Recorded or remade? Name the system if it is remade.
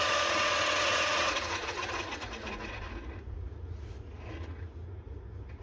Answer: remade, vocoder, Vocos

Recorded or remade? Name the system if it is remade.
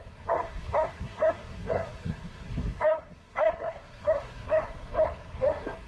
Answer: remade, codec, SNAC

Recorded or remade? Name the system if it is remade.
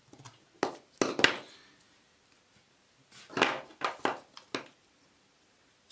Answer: recorded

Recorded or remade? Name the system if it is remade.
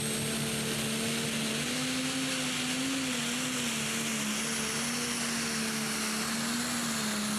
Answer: recorded